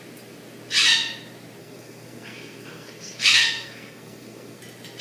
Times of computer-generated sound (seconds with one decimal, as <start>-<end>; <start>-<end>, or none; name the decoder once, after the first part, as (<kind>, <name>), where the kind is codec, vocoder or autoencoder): 1.6-4.6 (codec, SNAC)